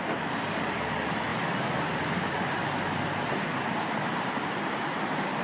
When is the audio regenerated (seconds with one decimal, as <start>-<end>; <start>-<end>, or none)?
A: none